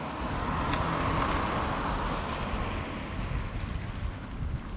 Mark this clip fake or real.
real